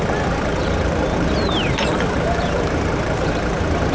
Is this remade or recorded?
remade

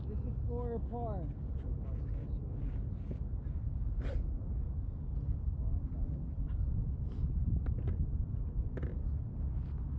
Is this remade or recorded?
recorded